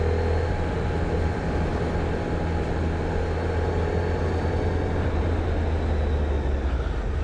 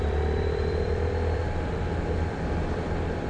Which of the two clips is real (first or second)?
first